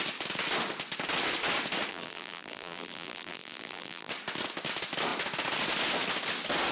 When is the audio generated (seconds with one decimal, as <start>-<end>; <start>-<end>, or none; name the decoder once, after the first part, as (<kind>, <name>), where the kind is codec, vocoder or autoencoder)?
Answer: 1.9-4.1 (vocoder, BigVGAN v2)